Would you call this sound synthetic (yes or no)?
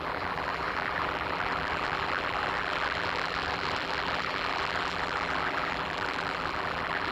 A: yes